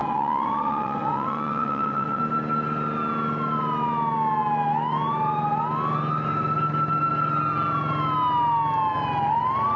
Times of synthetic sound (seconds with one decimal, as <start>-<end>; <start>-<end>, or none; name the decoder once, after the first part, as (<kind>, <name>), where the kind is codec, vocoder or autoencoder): 0.0-2.2 (vocoder, WaveNeXt)